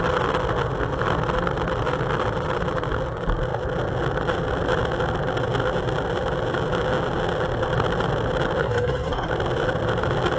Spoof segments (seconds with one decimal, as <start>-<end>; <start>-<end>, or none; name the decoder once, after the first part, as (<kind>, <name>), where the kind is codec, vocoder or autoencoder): 8.6-9.3 (codec, SNAC)